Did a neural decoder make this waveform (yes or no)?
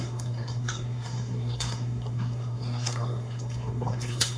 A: yes